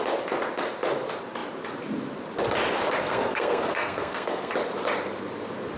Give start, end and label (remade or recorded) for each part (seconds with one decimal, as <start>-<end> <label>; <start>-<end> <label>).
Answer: 0.0-3.0 recorded; 3.0-4.5 remade; 4.5-5.8 recorded